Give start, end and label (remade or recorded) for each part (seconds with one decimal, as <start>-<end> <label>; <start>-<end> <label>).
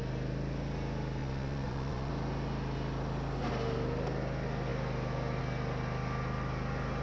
0.0-1.2 recorded; 1.2-2.1 remade; 2.1-7.0 recorded